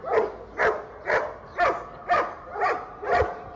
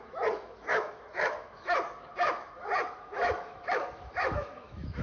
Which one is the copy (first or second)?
second